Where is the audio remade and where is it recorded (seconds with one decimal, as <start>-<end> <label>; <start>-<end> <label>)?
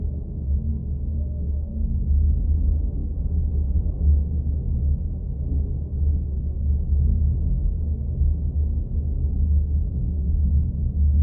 0.0-11.2 recorded